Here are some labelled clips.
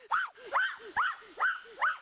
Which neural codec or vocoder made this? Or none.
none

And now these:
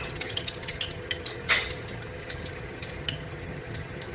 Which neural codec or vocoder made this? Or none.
vocoder, HiFi-GAN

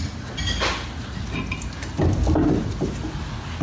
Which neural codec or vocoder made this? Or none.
none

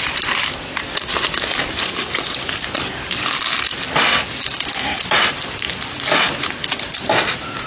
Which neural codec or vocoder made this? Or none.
none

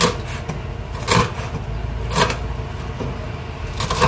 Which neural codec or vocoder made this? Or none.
none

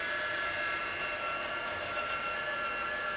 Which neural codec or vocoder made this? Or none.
none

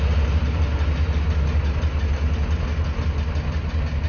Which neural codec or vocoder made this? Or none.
none